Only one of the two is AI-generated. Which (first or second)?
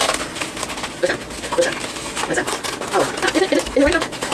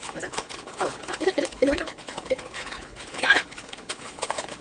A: second